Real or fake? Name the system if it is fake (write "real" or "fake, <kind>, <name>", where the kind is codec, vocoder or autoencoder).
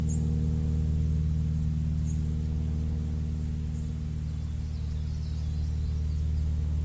real